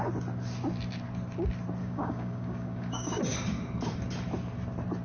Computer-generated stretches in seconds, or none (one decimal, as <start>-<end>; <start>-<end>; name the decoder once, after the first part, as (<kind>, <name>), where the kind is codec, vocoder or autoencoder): 1.8-3.2 (codec, DAC)